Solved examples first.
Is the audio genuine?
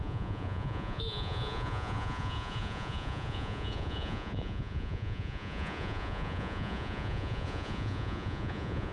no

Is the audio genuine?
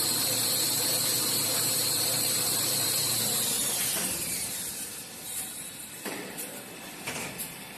no